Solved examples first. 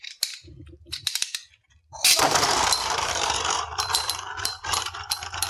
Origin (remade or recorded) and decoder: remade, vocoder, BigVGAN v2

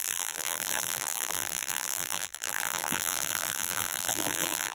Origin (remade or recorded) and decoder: remade, vocoder, BigVGAN v2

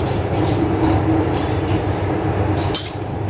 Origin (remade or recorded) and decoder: remade, vocoder, BigVGAN v2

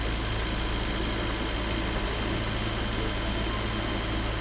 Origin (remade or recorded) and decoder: recorded